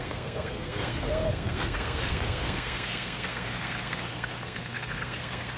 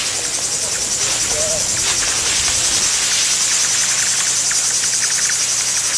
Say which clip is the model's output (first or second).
first